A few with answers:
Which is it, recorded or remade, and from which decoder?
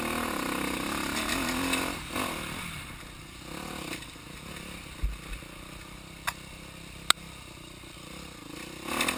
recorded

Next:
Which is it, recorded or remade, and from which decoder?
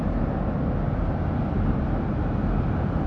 recorded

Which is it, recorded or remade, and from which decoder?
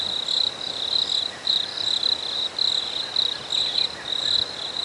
recorded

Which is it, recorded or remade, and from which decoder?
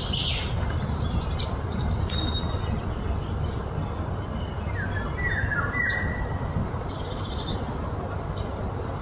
recorded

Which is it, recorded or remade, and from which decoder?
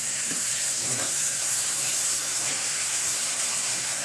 remade, codec, SNAC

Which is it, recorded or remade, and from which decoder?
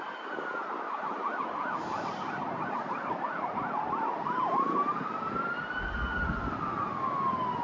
recorded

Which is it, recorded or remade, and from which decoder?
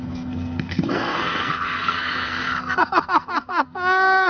remade, codec, SNAC